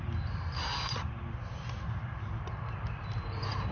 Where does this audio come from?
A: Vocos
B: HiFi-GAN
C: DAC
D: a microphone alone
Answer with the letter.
D